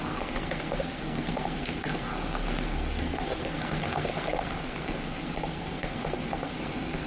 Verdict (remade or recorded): remade